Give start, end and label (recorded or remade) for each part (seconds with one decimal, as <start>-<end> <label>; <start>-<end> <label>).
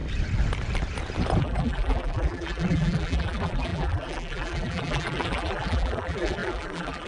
0.0-1.4 recorded; 1.4-7.1 remade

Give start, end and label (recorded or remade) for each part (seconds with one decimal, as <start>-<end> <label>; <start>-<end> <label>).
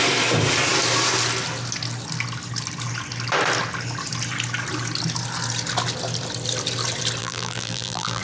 0.0-7.2 recorded; 7.2-8.2 remade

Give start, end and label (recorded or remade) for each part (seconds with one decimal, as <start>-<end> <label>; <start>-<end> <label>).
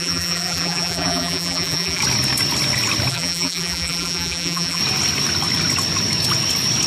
0.0-2.0 remade; 2.0-3.1 recorded; 3.1-4.8 remade; 4.8-6.9 recorded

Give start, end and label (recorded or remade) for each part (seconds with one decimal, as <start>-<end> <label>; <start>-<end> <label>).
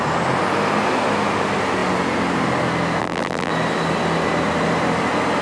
0.0-3.0 recorded; 3.0-3.5 remade; 3.5-5.4 recorded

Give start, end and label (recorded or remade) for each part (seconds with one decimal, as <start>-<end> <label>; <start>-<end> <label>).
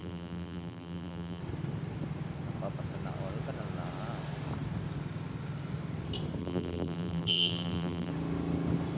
0.0-1.4 remade; 1.4-6.4 recorded; 6.4-8.1 remade; 8.1-9.0 recorded